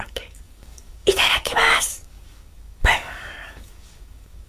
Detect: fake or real fake